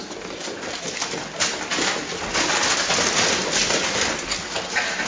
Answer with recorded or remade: recorded